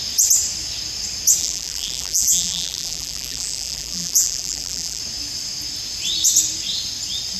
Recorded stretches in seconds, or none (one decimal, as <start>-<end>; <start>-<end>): 0.0-1.4; 5.0-7.4

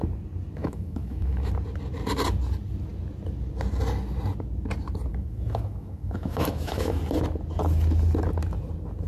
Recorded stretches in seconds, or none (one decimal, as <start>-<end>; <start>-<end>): 0.0-0.6; 1.5-5.1; 7.0-9.1

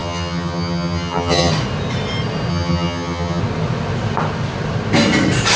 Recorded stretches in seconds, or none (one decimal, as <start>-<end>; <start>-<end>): 1.5-2.5; 3.4-5.6

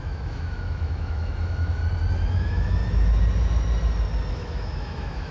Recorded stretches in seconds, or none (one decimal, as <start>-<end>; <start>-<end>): 1.8-2.3; 2.8-4.3